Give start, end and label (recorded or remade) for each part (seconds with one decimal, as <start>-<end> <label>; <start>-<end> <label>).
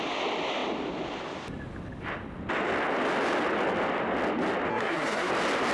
0.0-4.7 recorded; 4.7-5.3 remade; 5.3-5.7 recorded